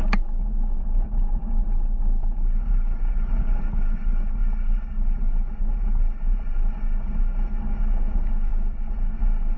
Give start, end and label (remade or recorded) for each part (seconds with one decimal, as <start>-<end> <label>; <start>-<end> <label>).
0.0-9.6 recorded